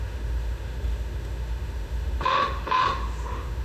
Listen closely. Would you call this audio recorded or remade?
remade